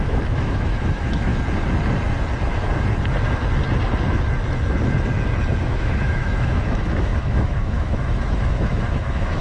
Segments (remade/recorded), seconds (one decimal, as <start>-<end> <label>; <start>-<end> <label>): 0.0-1.3 remade; 1.3-5.6 recorded; 5.6-9.4 remade